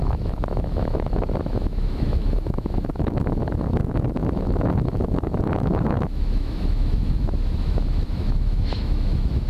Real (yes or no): no